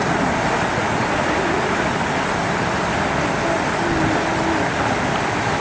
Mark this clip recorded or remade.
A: recorded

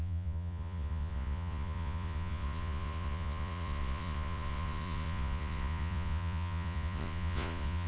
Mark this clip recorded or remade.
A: remade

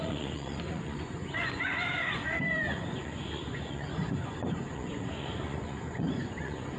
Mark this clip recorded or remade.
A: remade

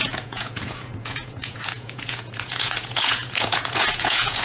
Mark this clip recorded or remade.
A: remade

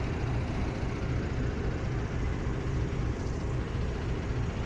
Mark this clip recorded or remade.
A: recorded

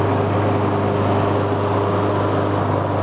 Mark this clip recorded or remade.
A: recorded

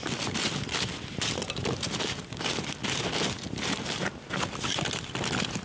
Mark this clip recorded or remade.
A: recorded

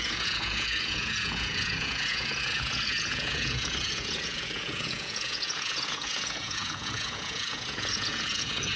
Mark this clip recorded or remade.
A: remade